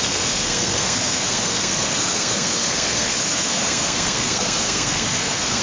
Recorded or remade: remade